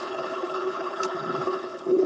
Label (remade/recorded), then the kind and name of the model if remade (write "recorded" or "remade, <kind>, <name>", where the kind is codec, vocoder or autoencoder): remade, codec, HILCodec